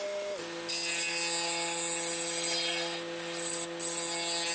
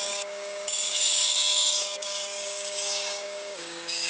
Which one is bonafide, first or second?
first